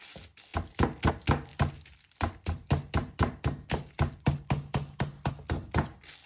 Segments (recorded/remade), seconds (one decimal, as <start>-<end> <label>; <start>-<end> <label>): 0.0-6.3 recorded